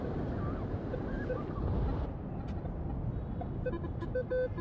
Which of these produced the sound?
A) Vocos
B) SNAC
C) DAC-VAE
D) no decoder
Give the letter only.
D